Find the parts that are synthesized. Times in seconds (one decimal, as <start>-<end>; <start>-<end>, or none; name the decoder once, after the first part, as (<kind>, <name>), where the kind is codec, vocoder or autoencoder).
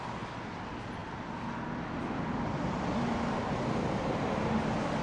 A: none